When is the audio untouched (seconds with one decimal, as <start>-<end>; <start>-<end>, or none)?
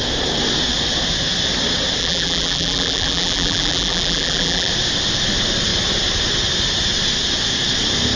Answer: 0.0-2.0; 4.7-8.2